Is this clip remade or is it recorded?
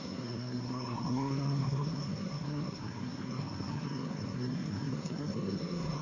remade